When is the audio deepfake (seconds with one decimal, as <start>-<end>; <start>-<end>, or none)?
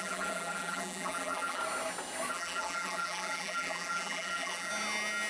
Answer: 0.0-1.6; 2.3-4.7